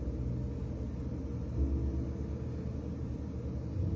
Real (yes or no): yes